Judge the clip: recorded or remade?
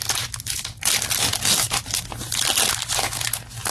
recorded